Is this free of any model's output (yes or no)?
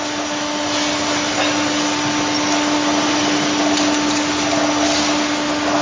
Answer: yes